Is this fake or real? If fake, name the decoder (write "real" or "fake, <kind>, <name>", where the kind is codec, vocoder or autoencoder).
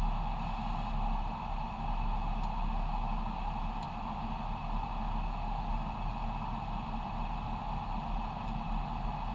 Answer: real